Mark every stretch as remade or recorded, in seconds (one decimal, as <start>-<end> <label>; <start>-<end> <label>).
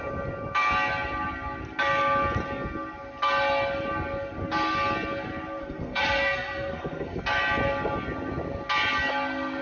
0.0-5.6 recorded; 5.6-7.2 remade; 7.2-9.6 recorded